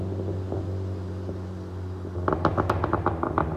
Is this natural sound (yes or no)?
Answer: yes